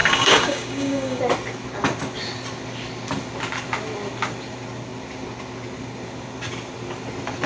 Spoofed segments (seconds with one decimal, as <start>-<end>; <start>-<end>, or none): 0.0-1.2